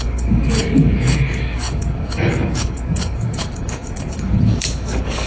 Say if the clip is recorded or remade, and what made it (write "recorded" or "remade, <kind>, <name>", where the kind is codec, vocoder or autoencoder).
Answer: remade, codec, DAC